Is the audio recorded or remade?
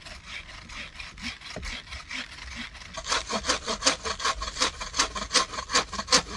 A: recorded